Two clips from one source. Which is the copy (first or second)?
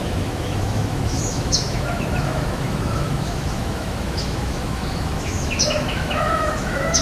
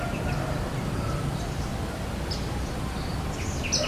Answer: first